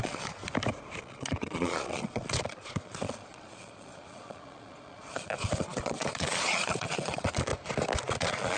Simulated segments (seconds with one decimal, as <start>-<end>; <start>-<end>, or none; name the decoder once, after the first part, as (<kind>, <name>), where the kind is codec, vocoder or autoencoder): 0.0-0.4 (vocoder, Vocos); 1.0-7.5; 8.0-8.6